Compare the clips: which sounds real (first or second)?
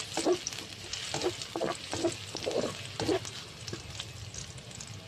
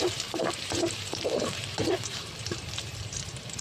first